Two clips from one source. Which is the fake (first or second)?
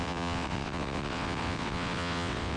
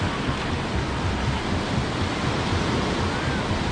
first